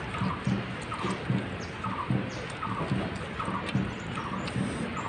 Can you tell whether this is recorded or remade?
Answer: recorded